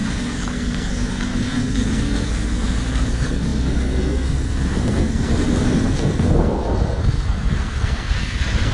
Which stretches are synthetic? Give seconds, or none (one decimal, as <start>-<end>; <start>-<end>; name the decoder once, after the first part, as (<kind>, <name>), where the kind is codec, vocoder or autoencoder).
0.0-8.7 (codec, SNAC)